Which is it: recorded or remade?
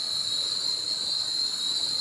recorded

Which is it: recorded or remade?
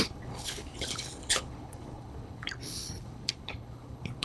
remade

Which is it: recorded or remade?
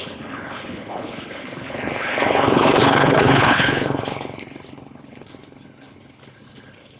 remade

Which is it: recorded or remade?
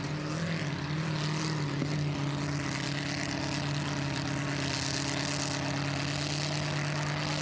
recorded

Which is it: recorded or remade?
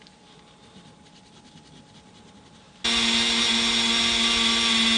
recorded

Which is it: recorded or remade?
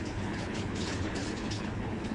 remade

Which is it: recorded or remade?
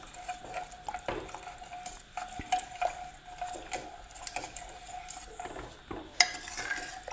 recorded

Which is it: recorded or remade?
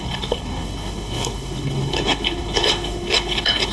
remade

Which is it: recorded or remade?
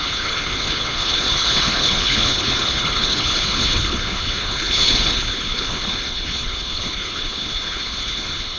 remade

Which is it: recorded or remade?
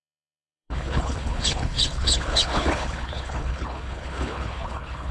remade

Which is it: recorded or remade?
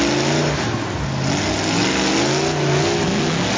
recorded